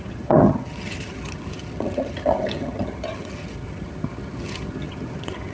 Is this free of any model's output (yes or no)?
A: no